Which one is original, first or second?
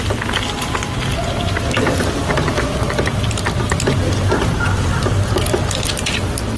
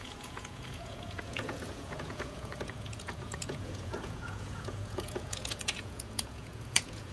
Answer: first